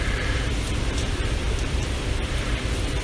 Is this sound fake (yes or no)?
yes